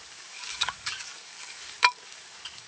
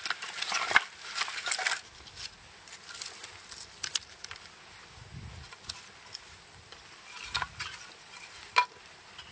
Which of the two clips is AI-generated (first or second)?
first